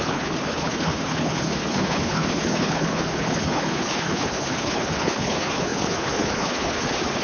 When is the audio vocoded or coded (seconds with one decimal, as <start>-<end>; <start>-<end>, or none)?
0.0-7.2